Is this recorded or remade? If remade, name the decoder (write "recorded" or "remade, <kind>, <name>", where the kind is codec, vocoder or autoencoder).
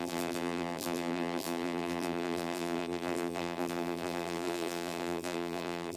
remade, vocoder, BigVGAN v2